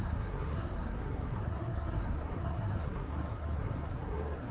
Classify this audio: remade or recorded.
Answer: remade